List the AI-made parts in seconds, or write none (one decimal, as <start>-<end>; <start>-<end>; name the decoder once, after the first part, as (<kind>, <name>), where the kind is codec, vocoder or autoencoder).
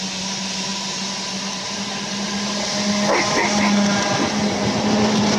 none